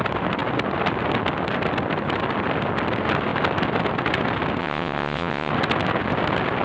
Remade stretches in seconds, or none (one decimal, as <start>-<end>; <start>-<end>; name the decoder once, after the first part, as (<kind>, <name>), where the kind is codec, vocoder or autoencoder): 4.6-5.5 (vocoder, WaveNeXt)